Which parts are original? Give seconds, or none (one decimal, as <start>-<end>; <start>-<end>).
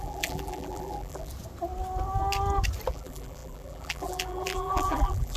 1.3-2.9